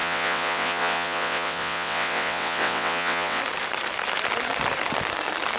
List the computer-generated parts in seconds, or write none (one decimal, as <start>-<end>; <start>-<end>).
0.0-3.4